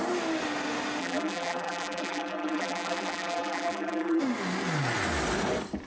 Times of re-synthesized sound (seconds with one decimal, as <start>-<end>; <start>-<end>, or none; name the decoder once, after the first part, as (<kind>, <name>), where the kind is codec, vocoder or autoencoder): 1.0-4.2 (vocoder, BigVGAN v2)